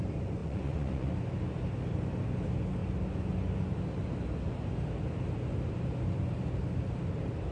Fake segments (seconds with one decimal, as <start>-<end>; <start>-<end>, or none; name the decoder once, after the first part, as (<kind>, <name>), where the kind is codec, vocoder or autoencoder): 0.4-1.1 (vocoder, Vocos)